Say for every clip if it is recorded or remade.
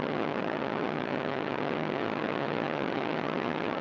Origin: remade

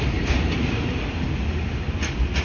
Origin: recorded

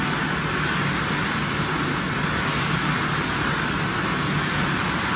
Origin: recorded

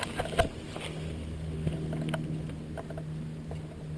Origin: recorded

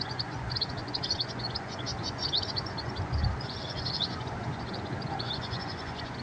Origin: remade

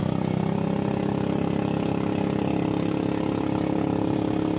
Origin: recorded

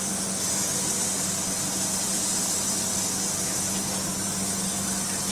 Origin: recorded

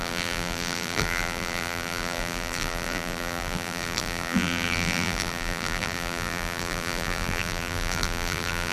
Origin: remade